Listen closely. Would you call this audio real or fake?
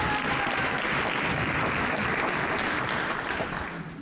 real